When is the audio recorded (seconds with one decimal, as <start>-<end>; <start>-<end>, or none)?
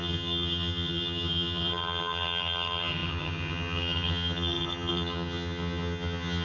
none